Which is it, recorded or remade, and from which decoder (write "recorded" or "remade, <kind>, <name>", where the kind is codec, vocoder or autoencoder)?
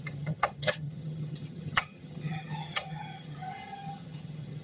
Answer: remade, vocoder, HiFi-GAN